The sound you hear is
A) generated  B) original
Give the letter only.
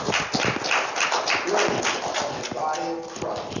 B